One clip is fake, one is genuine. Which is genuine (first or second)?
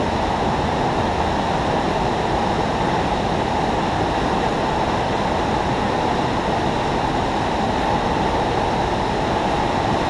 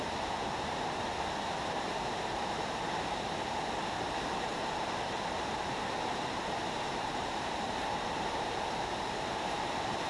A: first